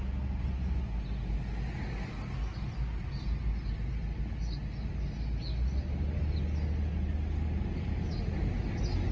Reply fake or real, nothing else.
real